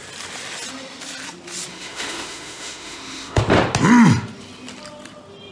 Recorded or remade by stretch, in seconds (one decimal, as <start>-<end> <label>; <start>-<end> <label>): 0.0-1.7 recorded; 1.7-3.4 remade; 3.4-5.5 recorded